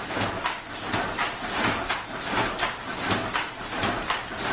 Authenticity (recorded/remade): recorded